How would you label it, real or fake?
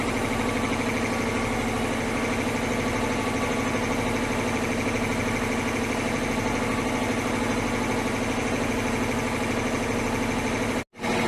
real